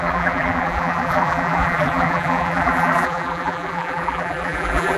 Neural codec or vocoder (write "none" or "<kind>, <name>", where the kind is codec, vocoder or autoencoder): vocoder, BigVGAN v2